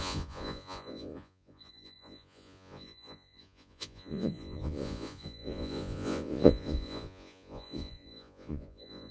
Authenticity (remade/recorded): remade